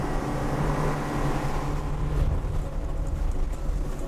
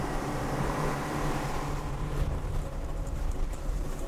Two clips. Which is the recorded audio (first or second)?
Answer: first